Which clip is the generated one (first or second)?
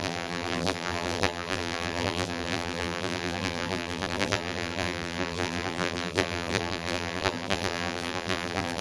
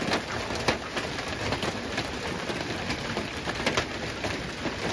first